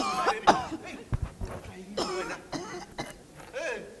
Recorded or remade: recorded